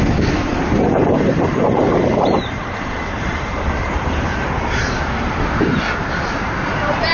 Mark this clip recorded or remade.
remade